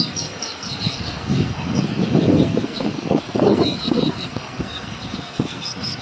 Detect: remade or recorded remade